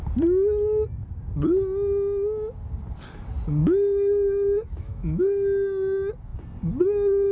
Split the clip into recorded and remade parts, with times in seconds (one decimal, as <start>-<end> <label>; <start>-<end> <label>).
0.0-3.6 recorded; 3.6-5.2 remade; 5.2-7.3 recorded